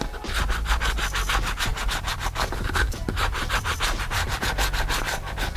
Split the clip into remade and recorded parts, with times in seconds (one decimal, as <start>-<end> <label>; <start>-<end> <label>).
0.0-1.7 recorded; 1.7-4.4 remade; 4.4-5.6 recorded